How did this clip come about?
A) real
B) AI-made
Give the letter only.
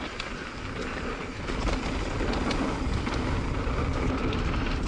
A